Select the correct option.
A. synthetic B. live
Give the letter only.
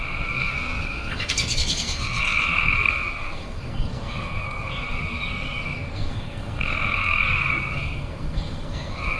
A